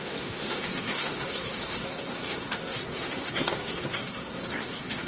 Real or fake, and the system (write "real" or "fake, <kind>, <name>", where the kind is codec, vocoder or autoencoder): fake, codec, SNAC